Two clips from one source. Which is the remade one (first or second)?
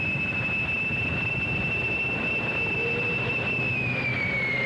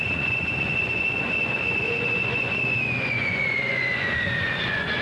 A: second